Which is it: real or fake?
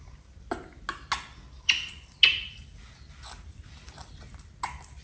real